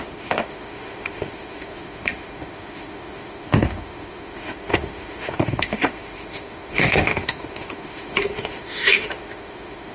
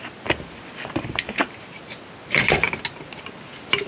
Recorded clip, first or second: second